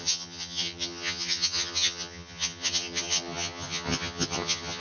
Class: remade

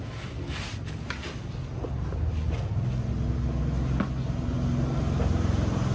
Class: recorded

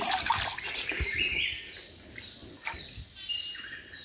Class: recorded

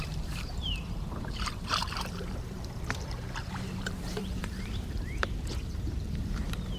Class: remade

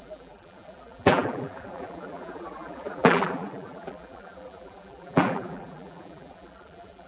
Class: remade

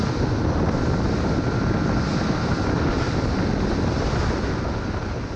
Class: recorded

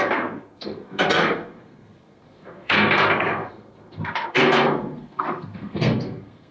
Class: remade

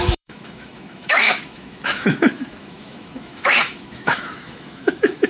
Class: remade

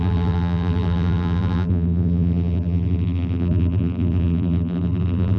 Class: remade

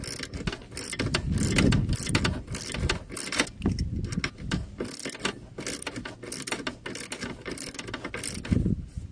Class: recorded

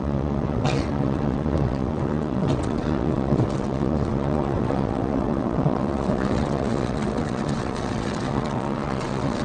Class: remade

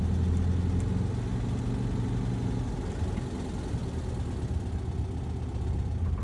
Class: recorded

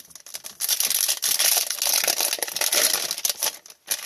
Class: recorded